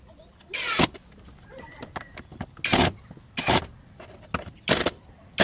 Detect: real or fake real